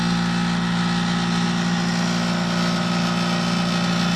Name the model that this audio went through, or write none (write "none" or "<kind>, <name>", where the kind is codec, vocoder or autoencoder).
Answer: none